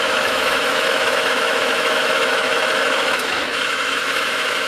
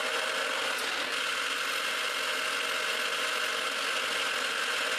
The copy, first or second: first